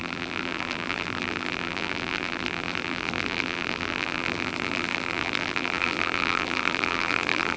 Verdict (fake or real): fake